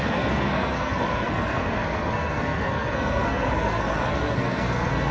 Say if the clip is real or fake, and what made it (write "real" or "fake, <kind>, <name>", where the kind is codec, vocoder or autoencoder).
fake, codec, SNAC